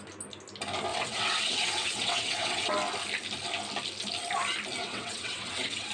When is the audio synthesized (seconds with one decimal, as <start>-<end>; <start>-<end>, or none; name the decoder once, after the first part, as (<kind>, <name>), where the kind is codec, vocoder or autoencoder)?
0.9-2.7 (vocoder, WaveNeXt); 4.8-5.9